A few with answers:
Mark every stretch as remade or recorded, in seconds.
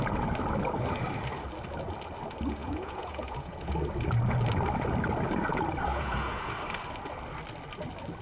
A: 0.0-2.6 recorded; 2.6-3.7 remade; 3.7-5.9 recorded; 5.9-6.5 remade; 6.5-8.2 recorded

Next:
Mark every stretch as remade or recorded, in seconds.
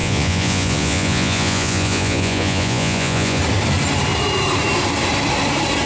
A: 0.0-3.4 remade; 3.4-5.9 recorded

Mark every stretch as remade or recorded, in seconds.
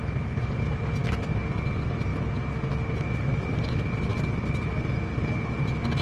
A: 0.0-6.0 recorded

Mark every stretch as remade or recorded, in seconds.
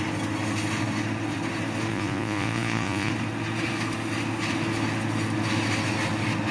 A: 0.0-1.9 recorded; 1.9-3.1 remade; 3.1-6.5 recorded